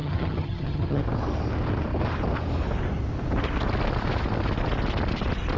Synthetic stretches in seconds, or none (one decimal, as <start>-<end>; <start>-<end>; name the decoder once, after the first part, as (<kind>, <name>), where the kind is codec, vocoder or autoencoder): 0.0-1.0 (vocoder, HiFi-GAN)